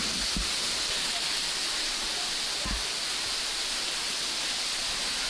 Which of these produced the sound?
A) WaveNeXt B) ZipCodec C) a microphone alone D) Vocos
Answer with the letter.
C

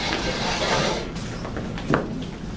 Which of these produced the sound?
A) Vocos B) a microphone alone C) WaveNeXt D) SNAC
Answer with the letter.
B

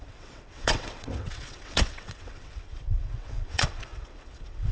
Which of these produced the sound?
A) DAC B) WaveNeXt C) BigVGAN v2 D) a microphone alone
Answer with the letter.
B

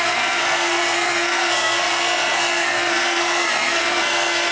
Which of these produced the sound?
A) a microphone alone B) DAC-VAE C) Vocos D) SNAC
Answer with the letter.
D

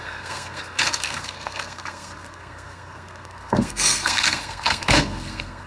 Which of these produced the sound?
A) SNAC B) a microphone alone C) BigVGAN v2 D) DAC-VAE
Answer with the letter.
A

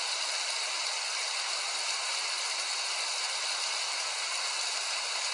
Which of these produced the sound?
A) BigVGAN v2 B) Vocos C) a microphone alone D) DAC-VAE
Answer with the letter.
C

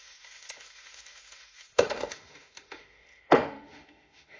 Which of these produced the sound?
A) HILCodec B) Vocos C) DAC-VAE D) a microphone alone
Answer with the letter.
C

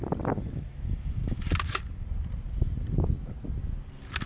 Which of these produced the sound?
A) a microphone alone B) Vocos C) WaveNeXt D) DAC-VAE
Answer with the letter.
A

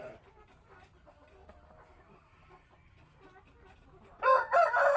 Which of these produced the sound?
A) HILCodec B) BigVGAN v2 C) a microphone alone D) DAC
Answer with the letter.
C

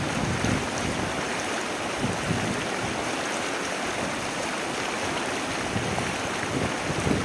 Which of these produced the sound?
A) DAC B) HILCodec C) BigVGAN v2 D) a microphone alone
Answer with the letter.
D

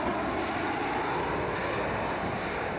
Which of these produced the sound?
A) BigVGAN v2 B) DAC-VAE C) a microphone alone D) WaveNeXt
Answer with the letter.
C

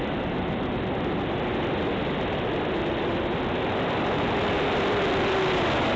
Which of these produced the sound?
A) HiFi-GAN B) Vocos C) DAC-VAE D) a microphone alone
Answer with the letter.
D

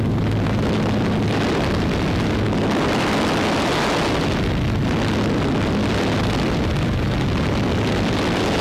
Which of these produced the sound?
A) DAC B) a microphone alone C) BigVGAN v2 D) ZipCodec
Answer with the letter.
B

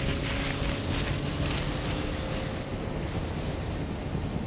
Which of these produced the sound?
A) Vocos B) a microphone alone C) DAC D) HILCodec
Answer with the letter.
B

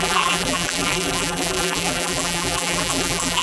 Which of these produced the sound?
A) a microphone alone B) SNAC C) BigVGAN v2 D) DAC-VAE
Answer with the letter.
C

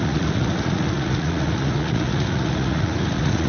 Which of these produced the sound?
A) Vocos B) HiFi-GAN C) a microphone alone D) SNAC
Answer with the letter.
A